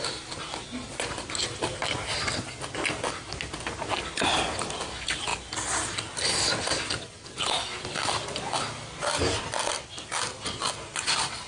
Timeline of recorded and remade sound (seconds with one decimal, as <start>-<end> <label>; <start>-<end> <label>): 0.0-11.5 recorded